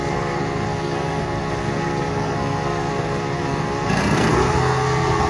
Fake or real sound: fake